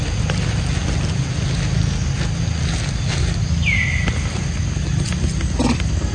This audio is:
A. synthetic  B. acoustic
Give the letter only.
B